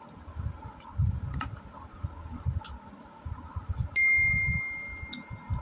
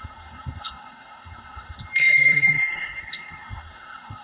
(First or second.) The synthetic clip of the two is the second